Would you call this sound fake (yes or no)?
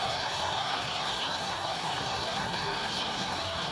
yes